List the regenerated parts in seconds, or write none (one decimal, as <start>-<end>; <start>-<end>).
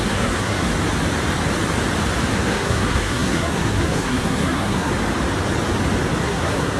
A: 0.0-0.7; 2.3-4.9; 6.2-6.8